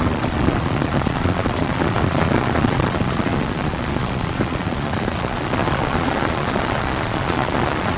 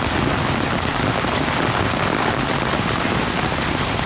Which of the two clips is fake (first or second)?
first